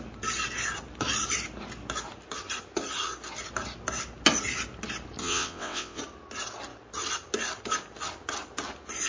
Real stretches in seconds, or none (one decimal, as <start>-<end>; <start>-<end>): 0.0-5.2; 6.0-9.1